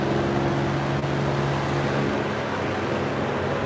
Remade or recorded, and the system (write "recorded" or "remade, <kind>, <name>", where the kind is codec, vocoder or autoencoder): recorded